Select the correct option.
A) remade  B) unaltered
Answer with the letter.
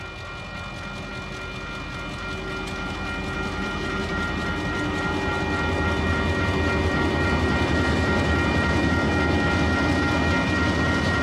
B